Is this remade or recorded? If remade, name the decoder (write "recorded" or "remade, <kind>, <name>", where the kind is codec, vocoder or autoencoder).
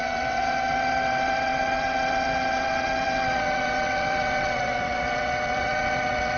remade, vocoder, WaveNeXt